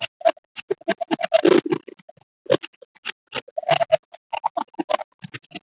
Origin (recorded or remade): recorded